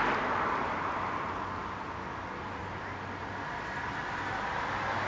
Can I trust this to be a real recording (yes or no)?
yes